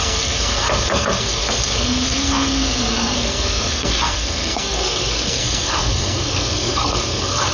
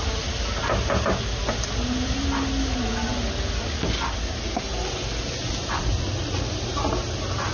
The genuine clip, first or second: second